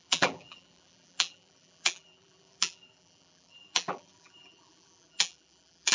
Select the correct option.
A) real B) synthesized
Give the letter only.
B